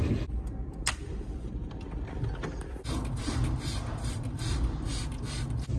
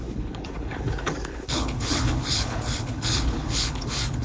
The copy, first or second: second